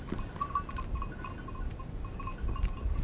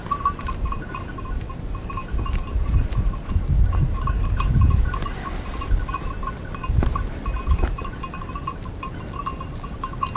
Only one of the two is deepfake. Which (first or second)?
second